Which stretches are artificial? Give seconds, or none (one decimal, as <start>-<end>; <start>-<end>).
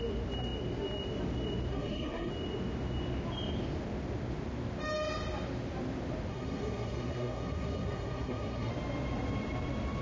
1.7-2.3; 6.3-8.7